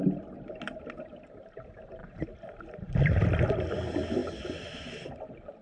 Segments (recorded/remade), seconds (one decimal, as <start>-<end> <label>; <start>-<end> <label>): 0.0-5.6 recorded